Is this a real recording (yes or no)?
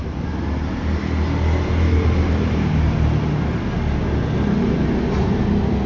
yes